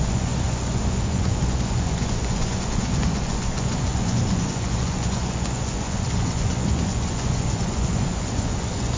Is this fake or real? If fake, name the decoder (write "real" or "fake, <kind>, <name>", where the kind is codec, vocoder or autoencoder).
fake, vocoder, Vocos